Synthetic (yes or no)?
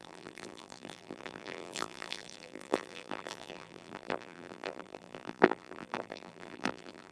yes